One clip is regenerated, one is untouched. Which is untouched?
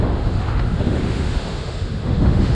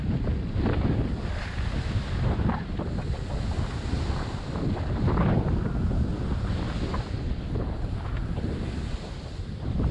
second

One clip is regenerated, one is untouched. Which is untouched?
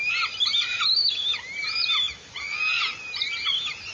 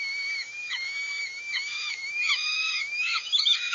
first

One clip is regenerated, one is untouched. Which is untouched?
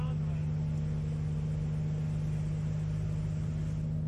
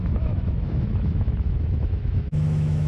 first